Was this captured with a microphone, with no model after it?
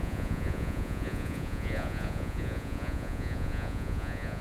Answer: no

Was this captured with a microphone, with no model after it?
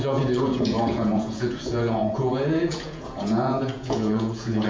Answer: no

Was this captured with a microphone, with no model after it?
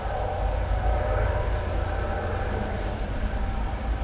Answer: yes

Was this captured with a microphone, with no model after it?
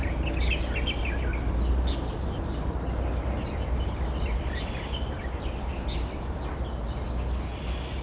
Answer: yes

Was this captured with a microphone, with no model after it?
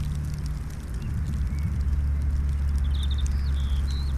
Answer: yes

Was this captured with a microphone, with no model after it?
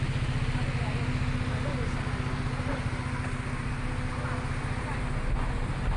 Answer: yes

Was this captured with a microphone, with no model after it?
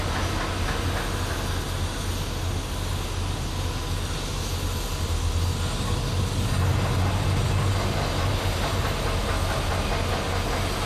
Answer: yes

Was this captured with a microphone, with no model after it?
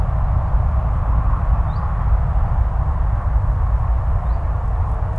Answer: yes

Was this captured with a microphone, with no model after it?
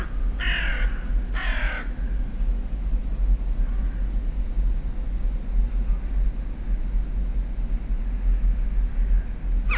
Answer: yes